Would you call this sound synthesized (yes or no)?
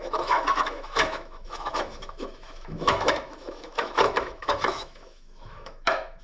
yes